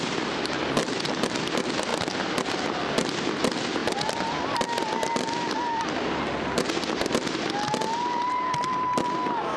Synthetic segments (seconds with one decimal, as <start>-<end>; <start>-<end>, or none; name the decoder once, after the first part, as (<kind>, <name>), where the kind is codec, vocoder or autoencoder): none